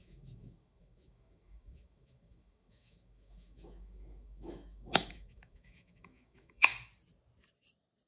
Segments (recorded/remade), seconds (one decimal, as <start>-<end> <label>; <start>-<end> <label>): 0.0-6.7 remade; 6.7-8.1 recorded